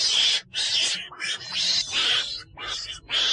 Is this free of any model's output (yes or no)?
yes